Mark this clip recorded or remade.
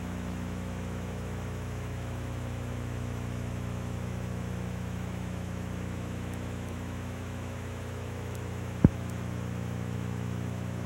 remade